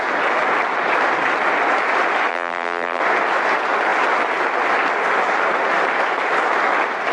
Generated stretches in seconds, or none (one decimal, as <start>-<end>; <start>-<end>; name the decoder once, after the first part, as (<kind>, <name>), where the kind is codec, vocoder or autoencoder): 2.3-3.0 (vocoder, BigVGAN v2)